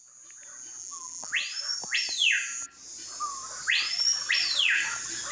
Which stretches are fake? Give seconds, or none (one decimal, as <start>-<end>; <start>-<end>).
0.8-1.3